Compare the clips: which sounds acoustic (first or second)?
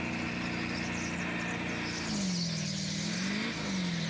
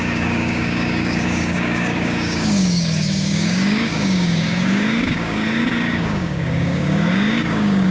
first